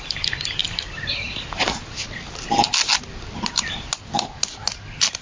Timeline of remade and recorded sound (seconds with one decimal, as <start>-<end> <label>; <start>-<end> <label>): 0.0-5.2 recorded